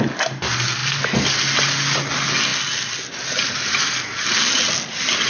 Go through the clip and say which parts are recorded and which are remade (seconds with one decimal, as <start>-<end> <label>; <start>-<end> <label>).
0.0-5.3 recorded